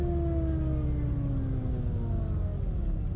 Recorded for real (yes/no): yes